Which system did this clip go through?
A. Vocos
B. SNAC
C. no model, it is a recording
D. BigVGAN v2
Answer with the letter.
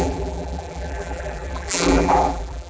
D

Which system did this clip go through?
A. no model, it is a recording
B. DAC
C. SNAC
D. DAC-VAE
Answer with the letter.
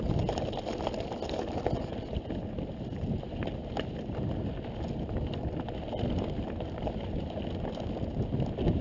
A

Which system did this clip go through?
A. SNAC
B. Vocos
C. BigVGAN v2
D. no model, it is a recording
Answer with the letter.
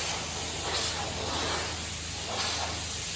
D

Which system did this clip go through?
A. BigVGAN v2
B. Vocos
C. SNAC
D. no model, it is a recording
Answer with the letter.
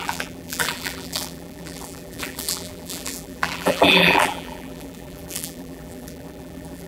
A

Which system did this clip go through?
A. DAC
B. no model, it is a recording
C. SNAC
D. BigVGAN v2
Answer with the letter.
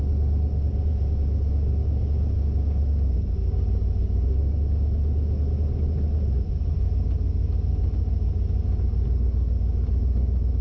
B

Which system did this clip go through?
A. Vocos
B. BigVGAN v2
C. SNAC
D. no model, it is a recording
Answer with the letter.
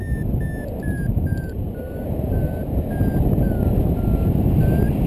D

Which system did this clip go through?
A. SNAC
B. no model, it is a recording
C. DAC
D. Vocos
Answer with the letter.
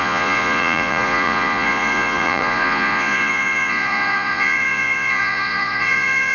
D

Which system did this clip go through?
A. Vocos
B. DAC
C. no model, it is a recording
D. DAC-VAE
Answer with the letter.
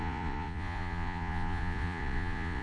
A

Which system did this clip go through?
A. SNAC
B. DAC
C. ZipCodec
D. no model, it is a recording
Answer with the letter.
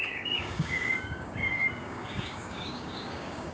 B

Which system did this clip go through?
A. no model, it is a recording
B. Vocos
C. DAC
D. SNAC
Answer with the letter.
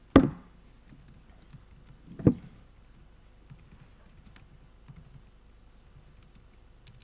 A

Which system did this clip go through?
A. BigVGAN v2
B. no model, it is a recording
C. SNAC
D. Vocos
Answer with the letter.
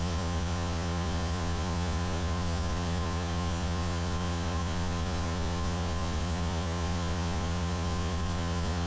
D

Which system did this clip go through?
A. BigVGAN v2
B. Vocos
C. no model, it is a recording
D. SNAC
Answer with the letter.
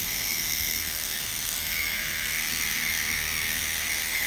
D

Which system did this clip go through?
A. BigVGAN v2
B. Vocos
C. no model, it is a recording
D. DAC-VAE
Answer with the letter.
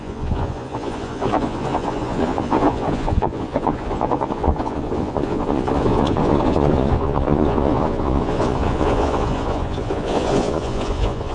B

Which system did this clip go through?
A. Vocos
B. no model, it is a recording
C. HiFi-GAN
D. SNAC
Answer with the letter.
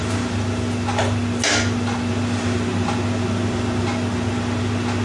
B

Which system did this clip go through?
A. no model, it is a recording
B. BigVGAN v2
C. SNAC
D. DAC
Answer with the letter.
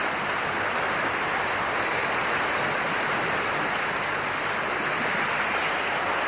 A